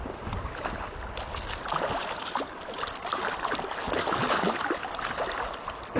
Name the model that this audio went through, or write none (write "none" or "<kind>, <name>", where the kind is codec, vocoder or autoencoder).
none